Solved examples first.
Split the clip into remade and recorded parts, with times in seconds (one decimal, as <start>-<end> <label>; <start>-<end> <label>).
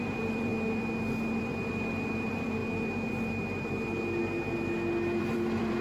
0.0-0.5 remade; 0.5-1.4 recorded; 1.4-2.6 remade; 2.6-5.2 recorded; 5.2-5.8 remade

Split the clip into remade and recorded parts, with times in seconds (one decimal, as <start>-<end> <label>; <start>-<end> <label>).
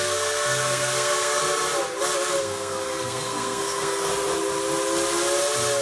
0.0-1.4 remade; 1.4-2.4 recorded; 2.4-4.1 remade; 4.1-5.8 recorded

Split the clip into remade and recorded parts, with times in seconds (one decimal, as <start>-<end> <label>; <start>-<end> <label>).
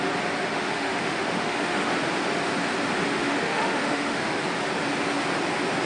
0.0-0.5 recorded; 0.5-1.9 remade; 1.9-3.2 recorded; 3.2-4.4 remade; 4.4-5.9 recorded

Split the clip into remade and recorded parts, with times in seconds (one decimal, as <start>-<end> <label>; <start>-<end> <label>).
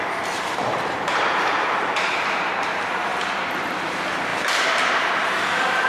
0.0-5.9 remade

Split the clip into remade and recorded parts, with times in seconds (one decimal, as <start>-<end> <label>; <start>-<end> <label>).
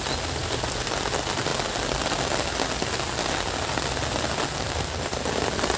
0.0-0.4 recorded; 0.4-1.0 remade; 1.0-5.8 recorded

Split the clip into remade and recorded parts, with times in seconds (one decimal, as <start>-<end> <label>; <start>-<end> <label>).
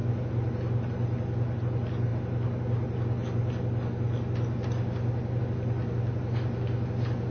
0.0-7.3 recorded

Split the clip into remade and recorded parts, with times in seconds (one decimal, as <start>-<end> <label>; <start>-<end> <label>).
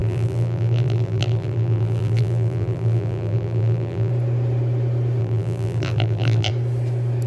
0.0-4.1 remade; 4.1-5.2 recorded; 5.2-6.5 remade; 6.5-7.3 recorded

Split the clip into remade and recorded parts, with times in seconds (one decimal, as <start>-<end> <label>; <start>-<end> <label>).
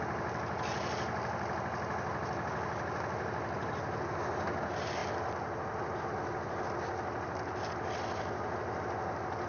0.0-9.5 recorded